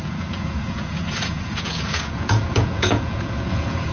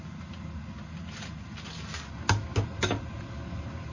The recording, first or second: second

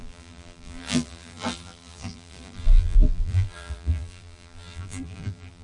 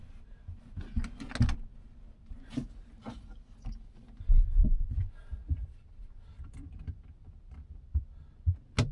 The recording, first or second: second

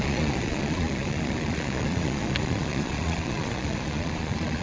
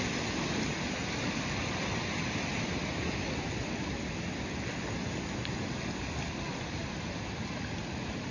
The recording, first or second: second